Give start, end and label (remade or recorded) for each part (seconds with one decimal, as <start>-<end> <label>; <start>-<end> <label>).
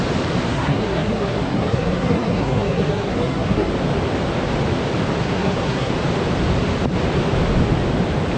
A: 0.0-0.5 recorded; 0.5-3.7 remade; 3.7-5.2 recorded; 5.2-5.9 remade; 5.9-8.4 recorded